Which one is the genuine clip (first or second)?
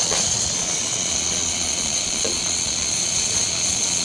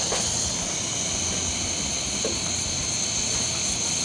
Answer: second